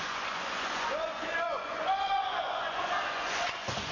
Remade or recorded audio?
remade